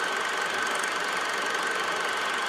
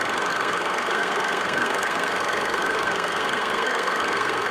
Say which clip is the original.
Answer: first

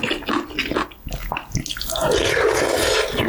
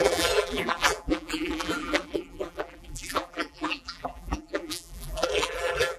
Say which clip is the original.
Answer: first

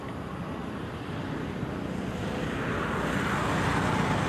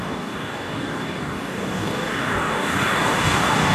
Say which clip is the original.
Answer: first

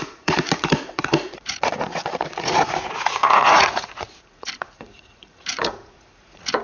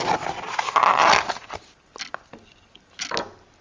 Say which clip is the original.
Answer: second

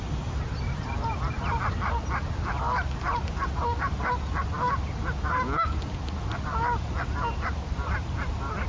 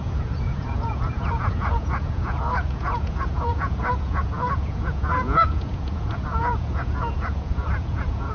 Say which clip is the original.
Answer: first